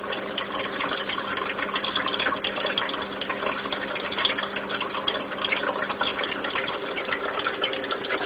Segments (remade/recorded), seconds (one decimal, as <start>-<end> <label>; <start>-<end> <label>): 0.0-6.1 recorded; 6.1-7.9 remade; 7.9-8.3 recorded